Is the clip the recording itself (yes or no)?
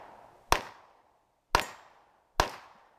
yes